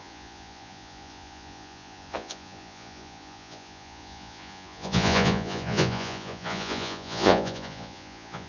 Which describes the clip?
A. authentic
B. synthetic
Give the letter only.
B